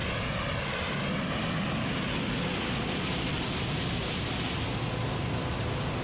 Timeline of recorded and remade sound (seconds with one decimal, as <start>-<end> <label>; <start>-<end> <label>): 0.0-6.0 recorded